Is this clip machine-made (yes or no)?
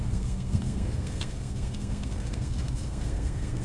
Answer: yes